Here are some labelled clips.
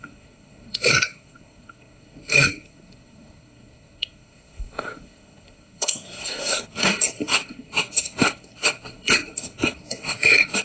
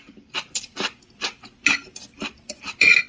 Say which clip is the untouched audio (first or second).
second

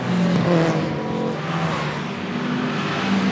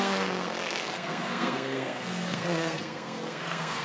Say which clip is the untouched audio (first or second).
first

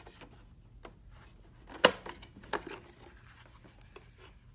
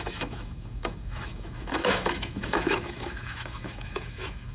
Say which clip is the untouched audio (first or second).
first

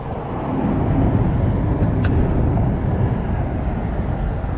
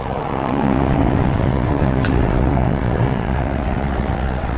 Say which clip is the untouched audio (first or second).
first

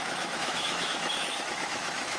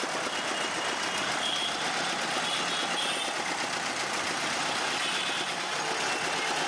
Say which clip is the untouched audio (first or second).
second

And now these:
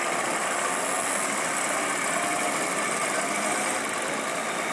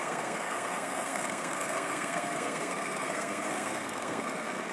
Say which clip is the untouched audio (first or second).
first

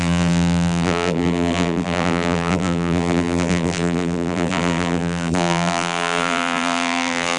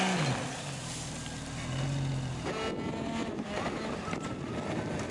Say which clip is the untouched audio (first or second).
second